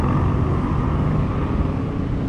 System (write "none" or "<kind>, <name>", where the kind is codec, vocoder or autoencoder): none